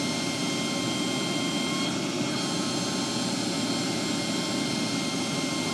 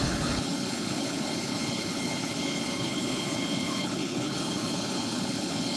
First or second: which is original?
first